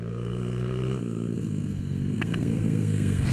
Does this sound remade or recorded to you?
remade